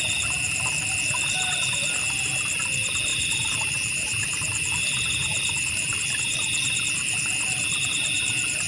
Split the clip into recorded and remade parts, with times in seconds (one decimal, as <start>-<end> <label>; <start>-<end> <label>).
0.0-3.1 recorded; 3.1-4.8 remade; 4.8-5.3 recorded; 5.3-6.8 remade; 6.8-8.7 recorded